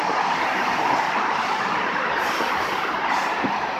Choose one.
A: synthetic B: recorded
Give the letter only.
B